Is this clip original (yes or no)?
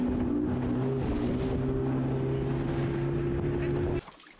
yes